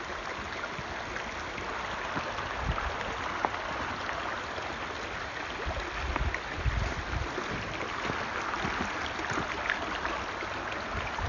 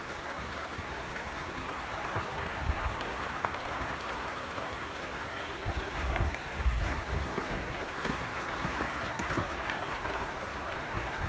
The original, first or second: first